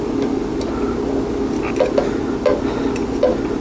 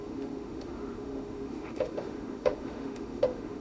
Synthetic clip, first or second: second